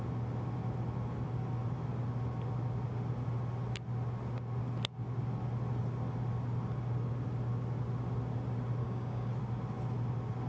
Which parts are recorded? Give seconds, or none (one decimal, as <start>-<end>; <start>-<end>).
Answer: 0.0-8.8; 9.3-10.5